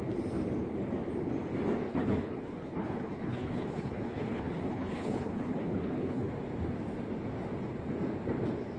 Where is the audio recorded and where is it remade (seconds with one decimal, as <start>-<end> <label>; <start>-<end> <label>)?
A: 0.0-1.9 recorded; 1.9-6.3 remade; 6.3-8.8 recorded